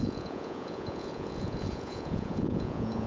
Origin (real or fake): fake